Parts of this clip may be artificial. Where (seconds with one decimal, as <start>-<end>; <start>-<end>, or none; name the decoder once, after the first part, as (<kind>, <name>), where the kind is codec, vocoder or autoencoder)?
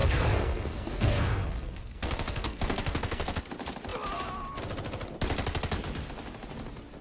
0.0-3.4 (codec, SNAC)